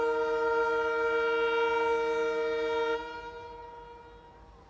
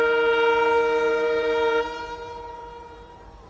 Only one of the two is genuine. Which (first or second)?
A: first